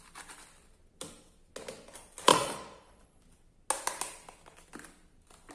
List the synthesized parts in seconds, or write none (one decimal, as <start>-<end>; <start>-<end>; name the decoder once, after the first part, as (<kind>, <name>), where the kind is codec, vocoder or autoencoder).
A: 2.3-3.2 (vocoder, Vocos)